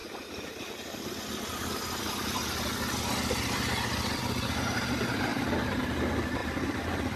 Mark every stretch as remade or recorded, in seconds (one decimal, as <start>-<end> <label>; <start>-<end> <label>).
0.0-4.2 recorded; 4.2-7.2 remade